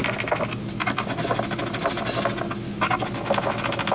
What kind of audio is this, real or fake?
real